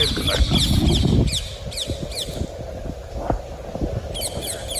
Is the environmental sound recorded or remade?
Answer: recorded